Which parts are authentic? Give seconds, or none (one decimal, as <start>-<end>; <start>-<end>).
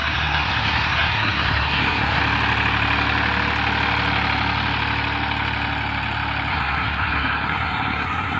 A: 2.2-6.5